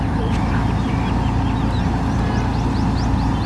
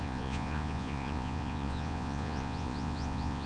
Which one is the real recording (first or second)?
first